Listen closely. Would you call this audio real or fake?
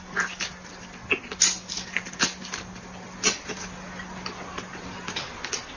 real